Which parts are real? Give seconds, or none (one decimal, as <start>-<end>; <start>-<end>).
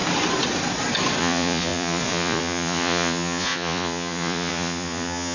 0.0-1.2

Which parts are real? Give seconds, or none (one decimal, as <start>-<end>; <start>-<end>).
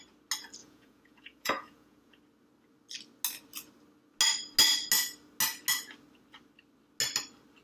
0.0-0.6; 2.2-7.6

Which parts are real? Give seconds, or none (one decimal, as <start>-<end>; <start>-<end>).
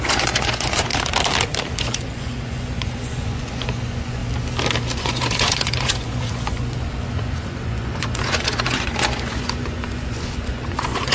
0.9-1.8; 4.2-4.9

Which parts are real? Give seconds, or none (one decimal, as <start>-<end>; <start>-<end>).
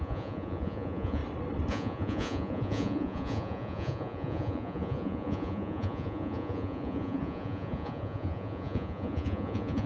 1.2-1.7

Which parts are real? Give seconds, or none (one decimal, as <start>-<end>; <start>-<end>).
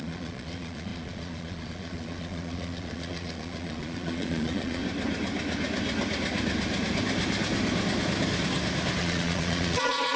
4.8-9.0